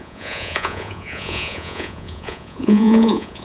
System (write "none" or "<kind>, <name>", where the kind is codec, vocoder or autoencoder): vocoder, Vocos